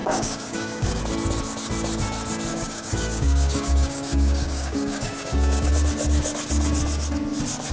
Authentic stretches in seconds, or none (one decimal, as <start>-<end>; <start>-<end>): 1.0-2.5; 5.7-7.7